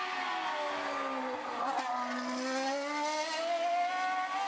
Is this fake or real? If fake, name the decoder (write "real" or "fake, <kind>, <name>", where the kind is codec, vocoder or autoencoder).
real